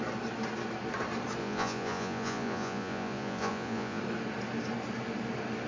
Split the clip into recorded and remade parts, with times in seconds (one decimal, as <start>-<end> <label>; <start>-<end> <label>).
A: 0.0-1.4 recorded; 1.4-4.0 remade; 4.0-5.7 recorded